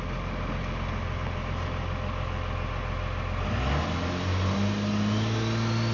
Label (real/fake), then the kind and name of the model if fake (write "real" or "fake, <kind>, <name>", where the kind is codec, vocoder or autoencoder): real